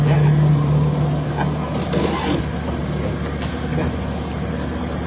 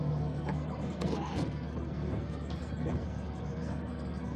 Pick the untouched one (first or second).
first